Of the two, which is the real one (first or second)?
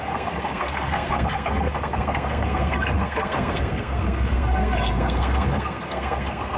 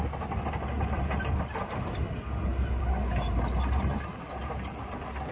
second